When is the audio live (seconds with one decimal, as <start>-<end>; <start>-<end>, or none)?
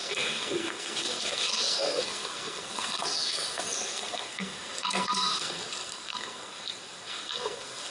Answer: none